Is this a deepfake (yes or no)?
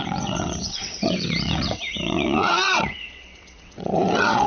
yes